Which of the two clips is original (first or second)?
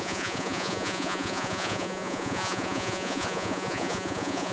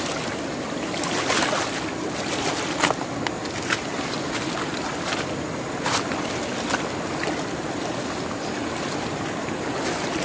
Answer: second